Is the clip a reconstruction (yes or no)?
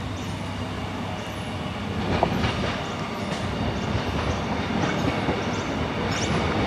no